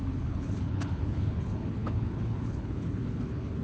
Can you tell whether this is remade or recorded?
remade